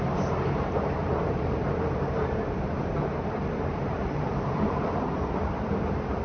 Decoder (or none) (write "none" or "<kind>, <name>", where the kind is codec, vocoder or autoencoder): vocoder, BigVGAN v2